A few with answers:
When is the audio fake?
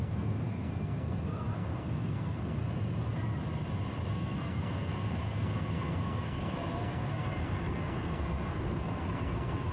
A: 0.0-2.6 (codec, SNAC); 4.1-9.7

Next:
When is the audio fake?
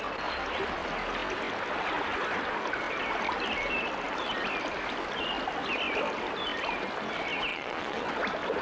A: 7.5-8.0 (vocoder, Vocos)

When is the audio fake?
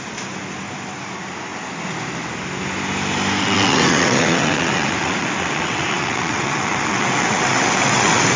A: 3.4-8.4 (vocoder, WaveNeXt)